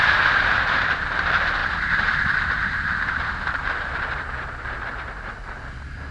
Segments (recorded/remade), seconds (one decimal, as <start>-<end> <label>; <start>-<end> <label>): 0.0-1.2 remade; 1.2-1.6 recorded; 1.6-5.3 remade; 5.3-6.1 recorded